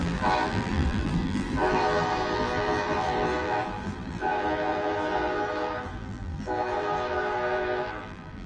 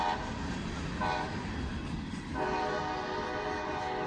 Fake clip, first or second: first